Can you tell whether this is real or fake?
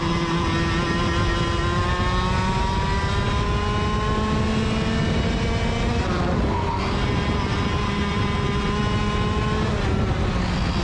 real